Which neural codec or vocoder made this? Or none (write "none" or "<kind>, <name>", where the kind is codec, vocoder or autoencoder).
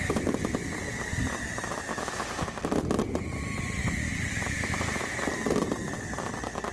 none